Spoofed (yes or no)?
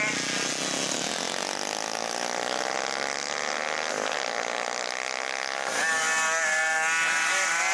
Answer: no